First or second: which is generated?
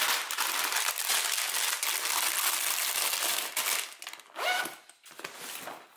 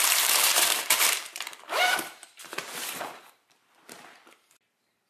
second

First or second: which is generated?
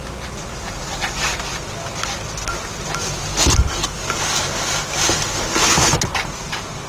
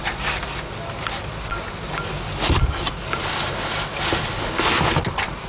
second